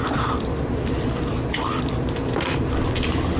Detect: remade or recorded remade